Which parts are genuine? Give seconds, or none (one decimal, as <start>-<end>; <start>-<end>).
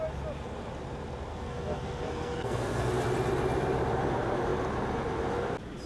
0.0-1.3; 2.9-5.9